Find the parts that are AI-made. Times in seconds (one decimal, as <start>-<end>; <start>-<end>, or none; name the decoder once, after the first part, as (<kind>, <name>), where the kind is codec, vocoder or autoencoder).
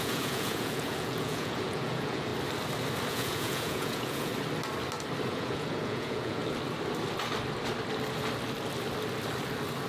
0.0-2.3 (vocoder, Vocos); 3.1-4.3; 5.3-6.4